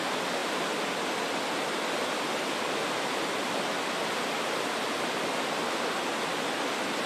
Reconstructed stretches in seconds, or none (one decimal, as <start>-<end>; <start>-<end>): none

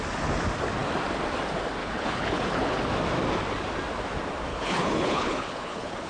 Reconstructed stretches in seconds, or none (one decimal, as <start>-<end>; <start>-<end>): 1.8-2.8; 4.5-6.1

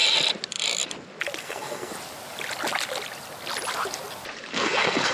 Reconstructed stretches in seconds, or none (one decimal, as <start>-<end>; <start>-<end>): 1.4-1.9; 4.5-5.1

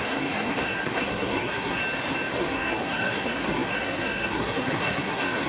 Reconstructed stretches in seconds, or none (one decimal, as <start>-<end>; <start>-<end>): 0.0-1.8; 2.3-5.5

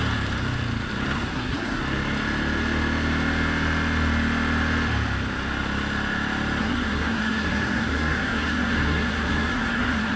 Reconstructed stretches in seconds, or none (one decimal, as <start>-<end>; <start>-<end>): 1.3-1.8; 6.6-10.2